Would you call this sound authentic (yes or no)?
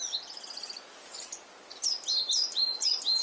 yes